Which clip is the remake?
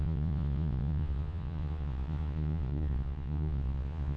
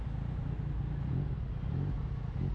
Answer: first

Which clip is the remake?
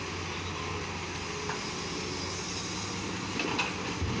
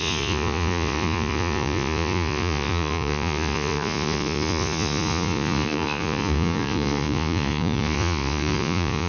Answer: second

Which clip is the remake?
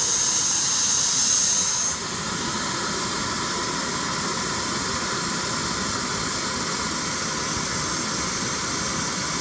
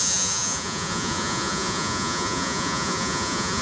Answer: second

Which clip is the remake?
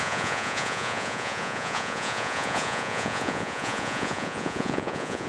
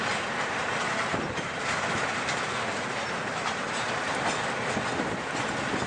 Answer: first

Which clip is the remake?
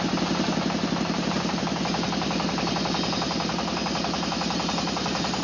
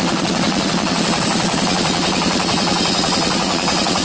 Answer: second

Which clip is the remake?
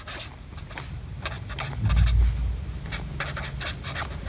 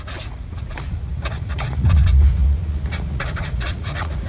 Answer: second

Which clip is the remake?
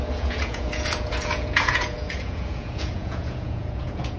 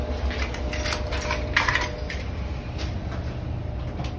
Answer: first